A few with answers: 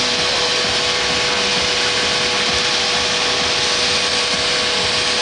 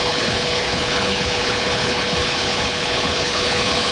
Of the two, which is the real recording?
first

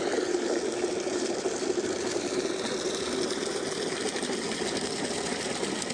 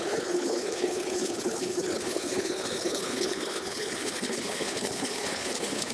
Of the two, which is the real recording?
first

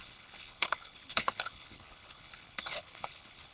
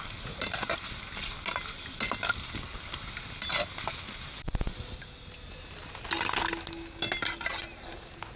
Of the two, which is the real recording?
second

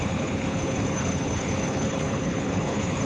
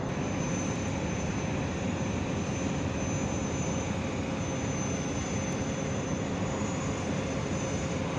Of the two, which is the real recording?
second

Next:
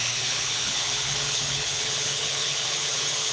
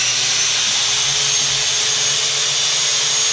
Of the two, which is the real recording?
second